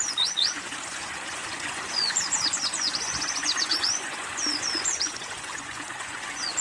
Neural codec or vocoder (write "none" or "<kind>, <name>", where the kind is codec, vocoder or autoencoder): vocoder, Vocos